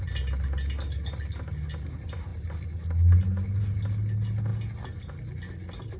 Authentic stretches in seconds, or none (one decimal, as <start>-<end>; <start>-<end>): 0.0-6.0